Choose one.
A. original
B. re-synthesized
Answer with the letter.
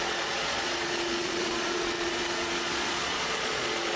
B